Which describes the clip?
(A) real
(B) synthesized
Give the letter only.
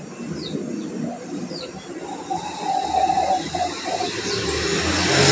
A